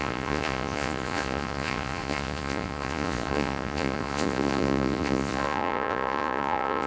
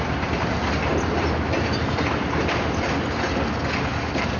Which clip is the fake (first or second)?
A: first